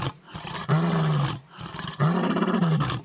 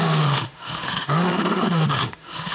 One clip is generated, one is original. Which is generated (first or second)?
second